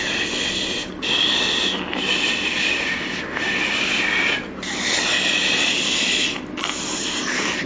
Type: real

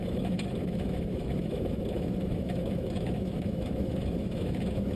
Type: fake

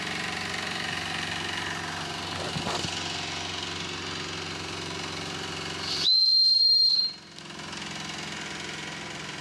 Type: real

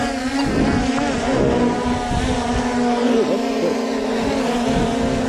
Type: real